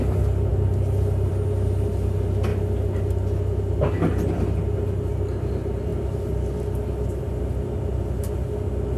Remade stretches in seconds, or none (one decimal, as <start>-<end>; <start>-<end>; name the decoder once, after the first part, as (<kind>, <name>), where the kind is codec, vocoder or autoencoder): none

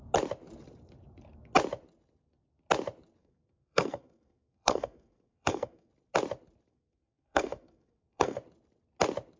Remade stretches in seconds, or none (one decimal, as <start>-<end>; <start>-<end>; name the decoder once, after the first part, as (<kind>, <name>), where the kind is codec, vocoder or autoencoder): 3.2-5.9 (codec, SNAC); 6.7-8.4

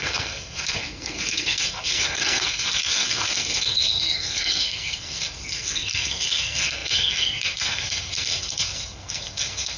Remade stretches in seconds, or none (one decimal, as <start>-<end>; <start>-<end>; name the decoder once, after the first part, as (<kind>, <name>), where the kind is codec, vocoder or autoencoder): 0.0-9.8 (codec, SNAC)

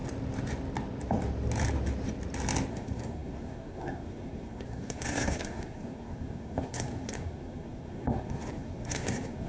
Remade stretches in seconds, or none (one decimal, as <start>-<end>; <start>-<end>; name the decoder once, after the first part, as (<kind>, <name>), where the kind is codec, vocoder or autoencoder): 2.7-9.5 (codec, SNAC)